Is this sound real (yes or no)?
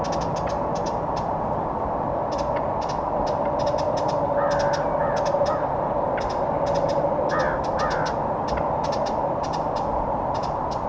yes